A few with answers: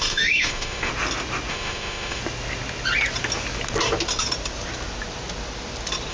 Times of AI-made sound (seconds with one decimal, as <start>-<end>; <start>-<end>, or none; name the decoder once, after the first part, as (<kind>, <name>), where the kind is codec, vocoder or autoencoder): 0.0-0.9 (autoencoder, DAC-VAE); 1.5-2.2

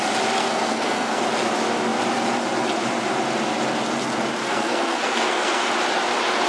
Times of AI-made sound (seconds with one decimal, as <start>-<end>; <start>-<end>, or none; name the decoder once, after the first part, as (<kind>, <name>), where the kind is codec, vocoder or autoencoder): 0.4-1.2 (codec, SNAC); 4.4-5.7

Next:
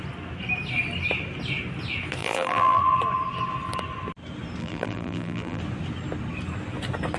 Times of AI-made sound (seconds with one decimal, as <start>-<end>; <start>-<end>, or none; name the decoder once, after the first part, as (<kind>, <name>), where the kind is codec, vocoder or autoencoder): 2.2-2.8 (vocoder, BigVGAN v2); 4.6-5.6